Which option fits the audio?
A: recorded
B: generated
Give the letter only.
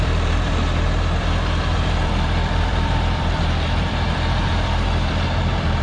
B